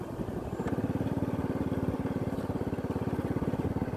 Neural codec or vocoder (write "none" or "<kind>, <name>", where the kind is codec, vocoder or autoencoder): none